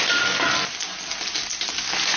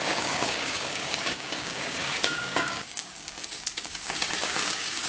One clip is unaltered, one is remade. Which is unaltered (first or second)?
first